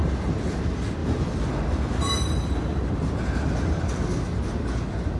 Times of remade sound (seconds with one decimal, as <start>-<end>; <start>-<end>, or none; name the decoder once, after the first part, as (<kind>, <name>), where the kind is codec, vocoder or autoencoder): 0.0-0.6 (vocoder, BigVGAN v2); 1.0-1.7; 2.8-3.4